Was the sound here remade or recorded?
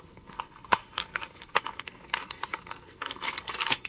remade